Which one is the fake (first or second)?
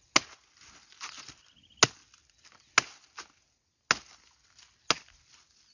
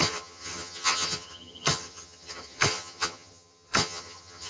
second